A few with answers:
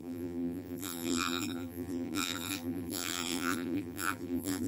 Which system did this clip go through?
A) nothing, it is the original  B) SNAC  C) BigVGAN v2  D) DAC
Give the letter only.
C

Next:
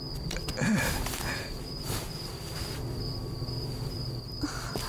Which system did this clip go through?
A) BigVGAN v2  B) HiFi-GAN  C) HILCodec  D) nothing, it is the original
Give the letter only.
A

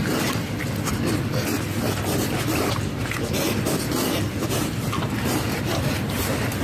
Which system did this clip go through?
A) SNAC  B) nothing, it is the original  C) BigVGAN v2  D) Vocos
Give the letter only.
B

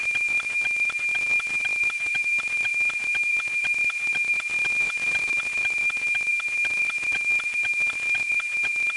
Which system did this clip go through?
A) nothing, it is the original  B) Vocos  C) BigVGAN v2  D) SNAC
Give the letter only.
C